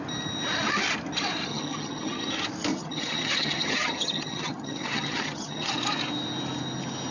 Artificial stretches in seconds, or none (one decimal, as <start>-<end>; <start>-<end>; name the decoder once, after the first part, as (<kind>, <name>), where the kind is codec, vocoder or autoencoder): 1.5-2.3 (vocoder, HiFi-GAN); 2.7-5.7